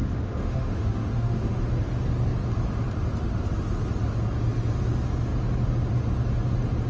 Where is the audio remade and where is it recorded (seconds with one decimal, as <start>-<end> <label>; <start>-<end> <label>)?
0.0-1.6 remade; 1.6-6.9 recorded